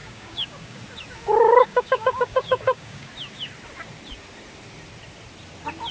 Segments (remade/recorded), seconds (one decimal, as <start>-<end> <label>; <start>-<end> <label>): 0.0-0.8 remade; 0.8-1.4 recorded; 1.4-3.1 remade; 3.1-5.9 recorded